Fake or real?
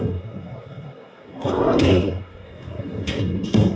fake